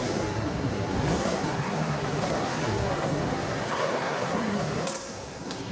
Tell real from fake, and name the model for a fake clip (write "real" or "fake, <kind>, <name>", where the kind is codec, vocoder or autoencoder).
fake, codec, SNAC